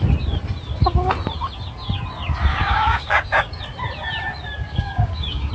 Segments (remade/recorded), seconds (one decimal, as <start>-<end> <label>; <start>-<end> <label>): 0.0-2.5 recorded; 2.5-3.6 remade; 3.6-4.6 recorded; 4.6-5.5 remade